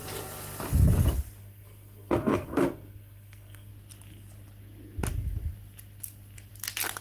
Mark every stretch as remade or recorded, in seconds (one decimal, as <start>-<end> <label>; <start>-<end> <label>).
0.0-1.4 recorded; 1.4-3.7 remade; 3.7-7.0 recorded